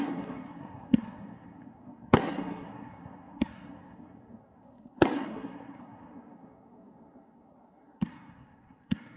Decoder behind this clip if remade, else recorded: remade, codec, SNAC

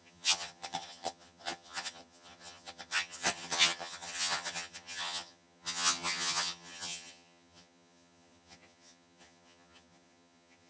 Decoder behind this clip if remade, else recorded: remade, vocoder, HiFi-GAN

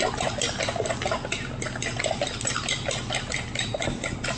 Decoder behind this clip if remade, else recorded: recorded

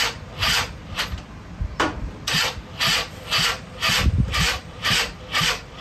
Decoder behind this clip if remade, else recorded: remade, vocoder, BigVGAN v2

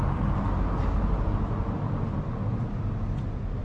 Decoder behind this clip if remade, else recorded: recorded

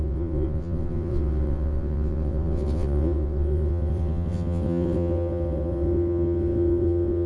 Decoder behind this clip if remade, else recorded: remade, vocoder, WaveNeXt